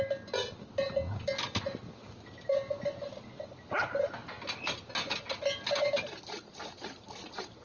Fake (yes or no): no